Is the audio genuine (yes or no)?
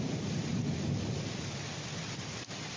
no